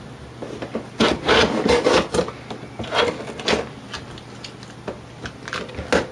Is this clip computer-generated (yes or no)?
no